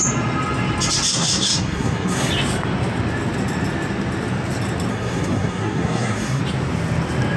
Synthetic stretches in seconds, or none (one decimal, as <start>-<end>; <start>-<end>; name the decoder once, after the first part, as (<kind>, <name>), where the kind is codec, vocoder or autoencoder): 1.1-2.3 (codec, SNAC); 4.9-6.4